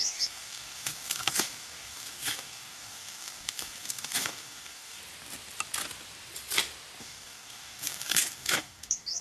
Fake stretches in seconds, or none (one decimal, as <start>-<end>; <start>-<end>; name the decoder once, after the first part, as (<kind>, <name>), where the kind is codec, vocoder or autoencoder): 0.0-5.0 (codec, DAC); 7.0-9.2